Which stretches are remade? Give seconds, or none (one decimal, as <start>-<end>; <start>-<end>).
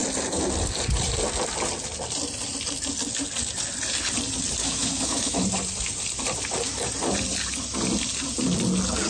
4.6-5.4